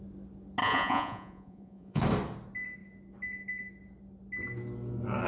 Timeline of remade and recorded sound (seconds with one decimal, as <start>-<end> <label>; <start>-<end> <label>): 0.0-0.6 recorded; 0.6-2.0 remade; 2.0-5.3 recorded